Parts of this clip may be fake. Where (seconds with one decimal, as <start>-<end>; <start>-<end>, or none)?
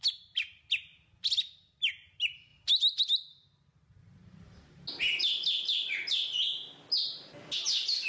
none